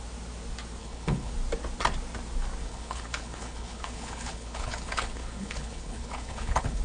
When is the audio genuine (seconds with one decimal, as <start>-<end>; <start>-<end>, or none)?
0.0-0.8; 1.3-2.6